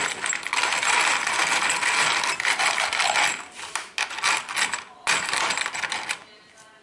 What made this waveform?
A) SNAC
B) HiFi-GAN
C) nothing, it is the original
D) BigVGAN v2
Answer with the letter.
C